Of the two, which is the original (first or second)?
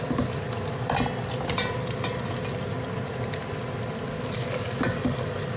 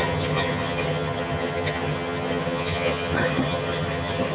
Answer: first